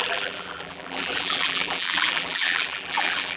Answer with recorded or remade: remade